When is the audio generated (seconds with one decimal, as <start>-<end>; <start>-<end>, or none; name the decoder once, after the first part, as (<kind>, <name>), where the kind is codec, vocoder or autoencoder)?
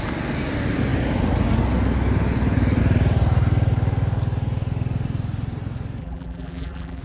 6.0-7.0 (vocoder, BigVGAN v2)